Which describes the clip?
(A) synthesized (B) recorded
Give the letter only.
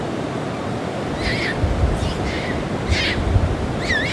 B